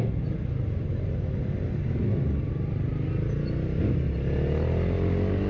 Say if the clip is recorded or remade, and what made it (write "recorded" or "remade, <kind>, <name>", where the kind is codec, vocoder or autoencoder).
recorded